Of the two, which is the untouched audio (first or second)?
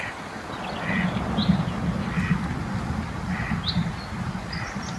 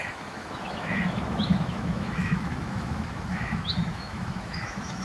first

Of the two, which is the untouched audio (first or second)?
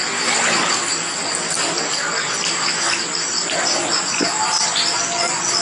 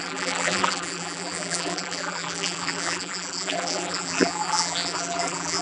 first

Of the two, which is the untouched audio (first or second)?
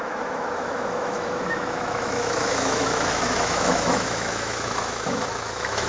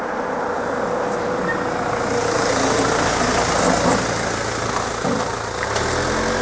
second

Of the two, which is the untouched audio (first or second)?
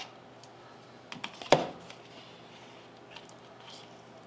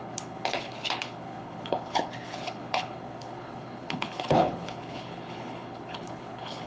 first